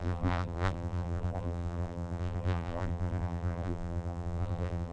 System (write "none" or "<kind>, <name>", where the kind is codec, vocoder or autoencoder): vocoder, BigVGAN v2